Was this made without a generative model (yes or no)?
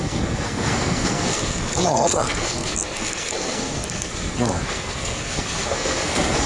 no